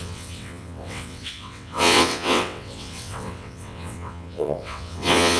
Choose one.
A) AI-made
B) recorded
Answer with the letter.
A